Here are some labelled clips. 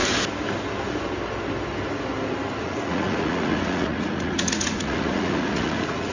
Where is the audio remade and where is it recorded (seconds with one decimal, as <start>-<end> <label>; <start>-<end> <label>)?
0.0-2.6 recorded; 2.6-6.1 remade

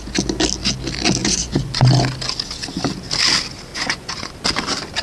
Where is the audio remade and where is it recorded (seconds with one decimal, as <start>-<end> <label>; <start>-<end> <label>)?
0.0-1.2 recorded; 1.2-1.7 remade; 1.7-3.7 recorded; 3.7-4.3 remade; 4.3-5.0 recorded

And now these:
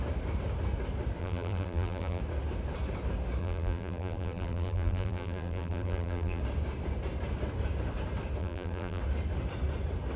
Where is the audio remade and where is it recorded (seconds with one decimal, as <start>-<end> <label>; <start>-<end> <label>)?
0.0-1.2 recorded; 1.2-2.2 remade; 2.2-3.4 recorded; 3.4-6.4 remade; 6.4-8.4 recorded; 8.4-9.0 remade; 9.0-10.2 recorded

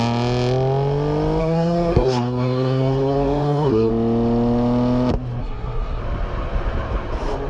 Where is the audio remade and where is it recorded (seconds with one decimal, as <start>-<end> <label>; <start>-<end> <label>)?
0.0-1.4 recorded; 1.4-3.9 remade; 3.9-5.4 recorded; 5.4-6.0 remade; 6.0-7.5 recorded